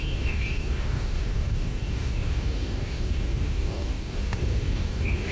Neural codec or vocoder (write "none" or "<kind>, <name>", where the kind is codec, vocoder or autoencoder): codec, DAC